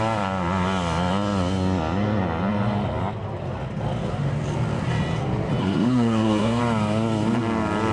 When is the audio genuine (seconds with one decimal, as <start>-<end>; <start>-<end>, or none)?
0.0-5.6; 6.6-7.9